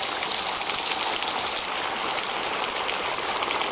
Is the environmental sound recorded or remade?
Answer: recorded